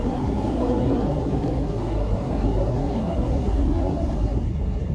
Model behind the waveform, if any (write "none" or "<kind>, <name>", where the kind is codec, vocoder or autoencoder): codec, SNAC